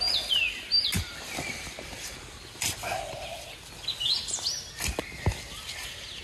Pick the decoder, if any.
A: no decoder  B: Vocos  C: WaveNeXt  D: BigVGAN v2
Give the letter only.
A